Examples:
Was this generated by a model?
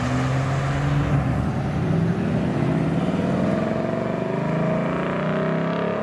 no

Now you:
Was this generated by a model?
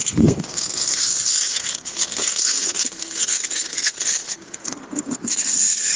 yes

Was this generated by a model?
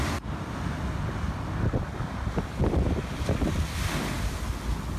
no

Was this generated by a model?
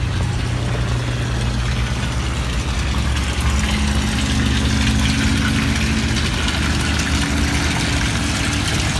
no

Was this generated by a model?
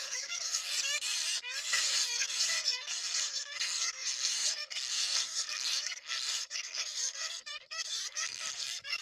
yes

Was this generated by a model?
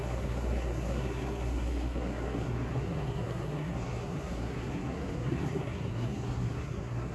yes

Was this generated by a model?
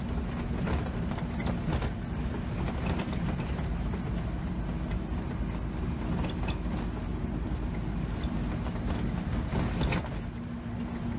no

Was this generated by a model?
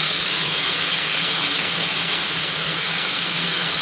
yes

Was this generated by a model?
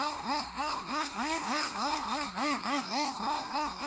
yes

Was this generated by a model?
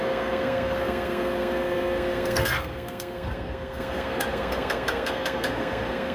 yes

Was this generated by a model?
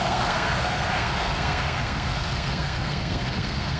yes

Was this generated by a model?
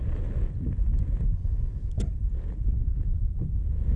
no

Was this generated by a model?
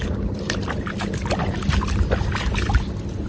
no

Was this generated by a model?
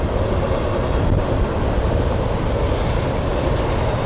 no